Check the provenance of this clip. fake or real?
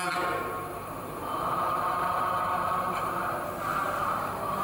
fake